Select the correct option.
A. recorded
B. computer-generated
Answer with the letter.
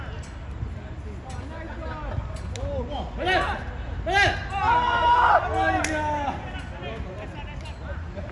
A